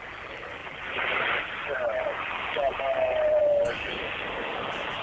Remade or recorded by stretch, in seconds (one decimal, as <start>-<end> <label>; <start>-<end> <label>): 0.0-5.0 recorded